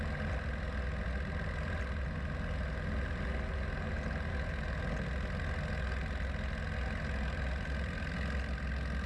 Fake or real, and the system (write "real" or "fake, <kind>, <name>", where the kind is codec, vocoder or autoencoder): real